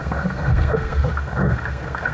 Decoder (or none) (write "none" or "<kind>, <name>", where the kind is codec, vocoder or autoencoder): codec, SNAC